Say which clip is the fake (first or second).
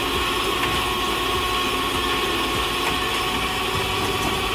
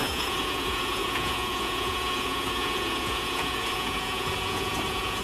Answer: second